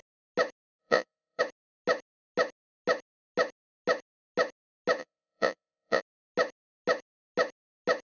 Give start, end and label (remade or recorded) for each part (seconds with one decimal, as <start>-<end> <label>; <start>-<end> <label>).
0.0-0.8 recorded; 0.8-1.4 remade; 1.4-5.0 recorded; 5.0-6.0 remade; 6.0-8.2 recorded